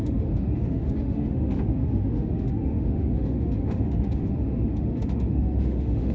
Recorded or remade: remade